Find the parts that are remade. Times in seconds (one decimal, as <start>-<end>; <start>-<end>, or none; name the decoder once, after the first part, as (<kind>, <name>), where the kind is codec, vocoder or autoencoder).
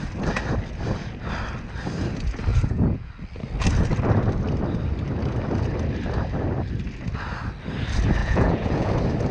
2.5-3.1 (vocoder, Vocos); 8.2-8.9